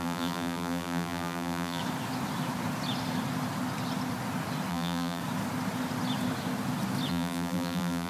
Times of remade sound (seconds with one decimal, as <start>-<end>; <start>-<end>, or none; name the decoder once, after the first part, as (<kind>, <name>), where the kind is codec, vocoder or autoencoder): 0.0-1.8 (vocoder, BigVGAN v2); 4.7-5.2; 7.1-8.1